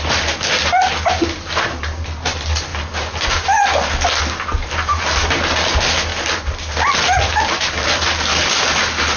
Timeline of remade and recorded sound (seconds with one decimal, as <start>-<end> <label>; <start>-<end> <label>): 0.0-9.2 recorded